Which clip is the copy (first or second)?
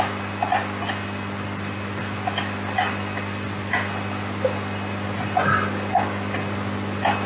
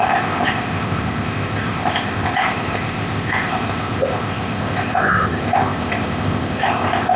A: second